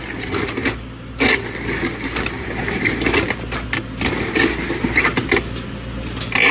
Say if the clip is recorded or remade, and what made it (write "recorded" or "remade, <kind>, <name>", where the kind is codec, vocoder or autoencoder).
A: recorded